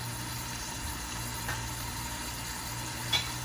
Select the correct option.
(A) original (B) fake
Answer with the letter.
B